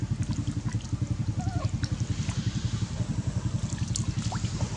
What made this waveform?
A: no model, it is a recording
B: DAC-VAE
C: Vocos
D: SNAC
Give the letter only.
A